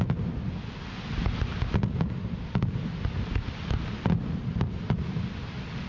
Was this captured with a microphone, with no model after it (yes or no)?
yes